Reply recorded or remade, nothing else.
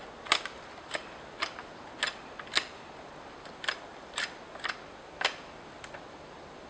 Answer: recorded